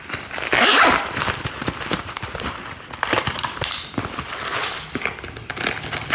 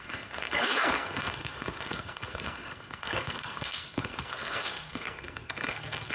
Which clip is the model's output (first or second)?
second